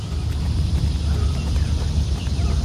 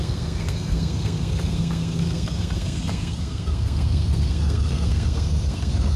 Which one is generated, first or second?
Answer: second